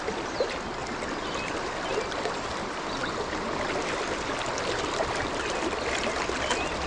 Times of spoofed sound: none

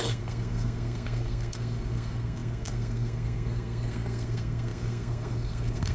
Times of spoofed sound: 0.0-5.9

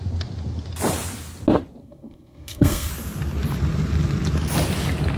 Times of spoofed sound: 1.8-2.9

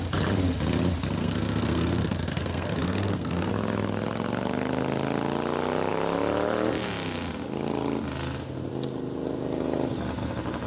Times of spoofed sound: 1.2-3.5

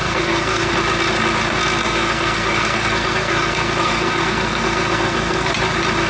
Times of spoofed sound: 0.0-0.7; 1.8-5.5